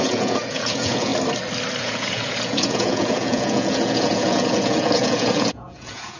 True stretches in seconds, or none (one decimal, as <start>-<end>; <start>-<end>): 1.1-1.8